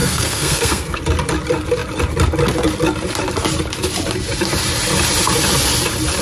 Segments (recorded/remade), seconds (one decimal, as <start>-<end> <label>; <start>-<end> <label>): 0.0-1.0 remade; 1.0-6.2 recorded